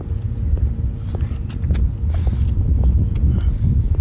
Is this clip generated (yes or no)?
no